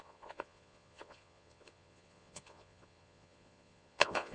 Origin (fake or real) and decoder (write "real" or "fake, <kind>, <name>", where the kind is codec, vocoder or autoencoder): fake, vocoder, Vocos